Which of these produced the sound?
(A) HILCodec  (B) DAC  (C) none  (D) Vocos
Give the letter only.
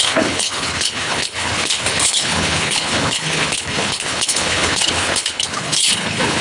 A